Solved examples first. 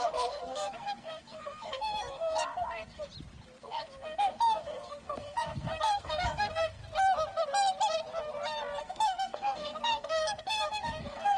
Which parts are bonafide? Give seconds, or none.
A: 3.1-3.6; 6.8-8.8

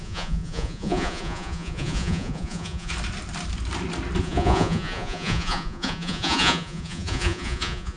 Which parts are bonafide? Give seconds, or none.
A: 2.9-4.2

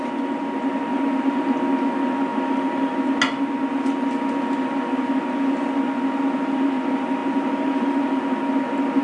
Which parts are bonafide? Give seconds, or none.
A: 0.0-0.9; 1.4-2.3; 2.9-7.2; 8.4-9.0

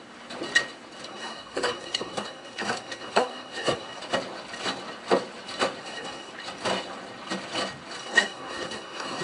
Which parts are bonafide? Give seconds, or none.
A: 0.0-1.1; 4.0-5.8; 6.3-8.0

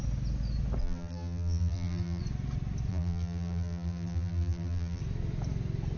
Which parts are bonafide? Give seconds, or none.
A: 0.0-0.8; 2.2-2.9; 5.0-6.0